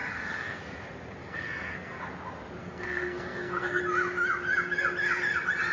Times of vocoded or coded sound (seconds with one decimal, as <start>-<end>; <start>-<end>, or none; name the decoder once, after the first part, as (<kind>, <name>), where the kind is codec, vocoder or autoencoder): 0.0-0.6 (codec, SNAC); 1.2-2.0; 2.6-3.8